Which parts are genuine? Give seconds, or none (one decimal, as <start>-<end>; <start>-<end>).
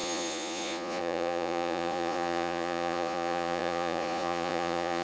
none